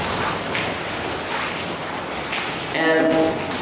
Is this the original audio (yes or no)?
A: yes